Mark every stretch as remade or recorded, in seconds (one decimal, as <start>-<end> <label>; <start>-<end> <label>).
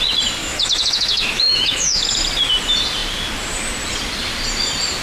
0.0-0.4 recorded; 0.4-2.2 remade; 2.2-5.0 recorded